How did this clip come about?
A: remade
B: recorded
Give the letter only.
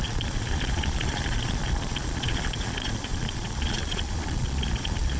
A